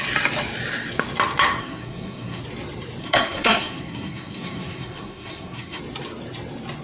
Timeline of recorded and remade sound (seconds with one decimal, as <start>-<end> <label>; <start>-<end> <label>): 0.0-1.6 recorded; 1.6-2.4 remade; 2.4-3.0 recorded; 3.0-5.8 remade; 5.8-6.8 recorded